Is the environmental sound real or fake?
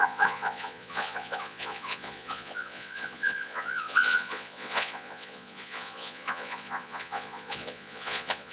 fake